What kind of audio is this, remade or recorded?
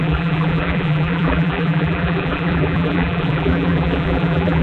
remade